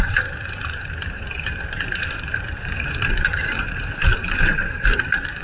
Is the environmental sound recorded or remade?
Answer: remade